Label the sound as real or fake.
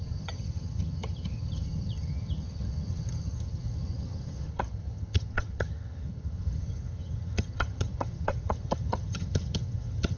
fake